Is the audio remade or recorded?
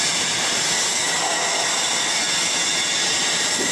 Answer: recorded